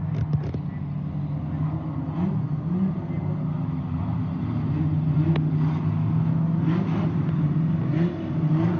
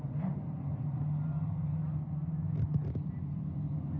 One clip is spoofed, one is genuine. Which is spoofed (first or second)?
second